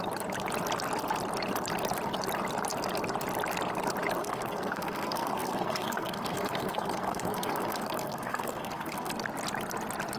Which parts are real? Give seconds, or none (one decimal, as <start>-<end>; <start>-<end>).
0.0-4.2; 9.1-10.2

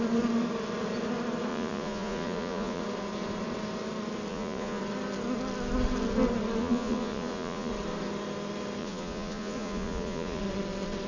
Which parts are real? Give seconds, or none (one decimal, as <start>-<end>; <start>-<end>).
0.0-1.5; 2.8-4.3; 4.8-6.6; 7.7-8.8; 10.4-11.1

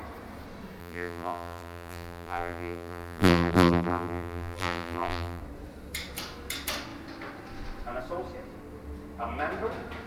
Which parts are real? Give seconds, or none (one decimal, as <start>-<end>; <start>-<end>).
0.0-0.8; 5.4-10.1

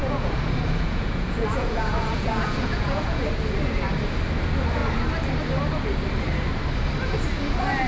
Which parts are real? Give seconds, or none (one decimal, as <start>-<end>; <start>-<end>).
3.2-7.9

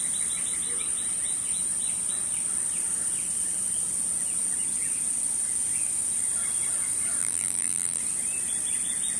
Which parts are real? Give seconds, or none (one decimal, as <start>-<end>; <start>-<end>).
0.0-7.2; 8.0-9.2

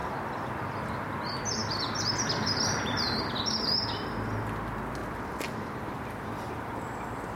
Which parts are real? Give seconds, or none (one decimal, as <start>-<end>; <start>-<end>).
0.0-5.0; 6.2-7.4

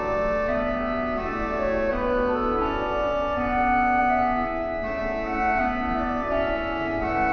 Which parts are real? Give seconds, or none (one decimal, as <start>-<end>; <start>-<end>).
0.0-7.3